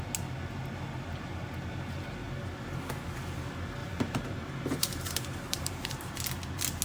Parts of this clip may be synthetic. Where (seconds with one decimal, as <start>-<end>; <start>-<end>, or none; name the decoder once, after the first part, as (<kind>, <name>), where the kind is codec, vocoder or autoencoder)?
3.8-6.1 (vocoder, BigVGAN v2)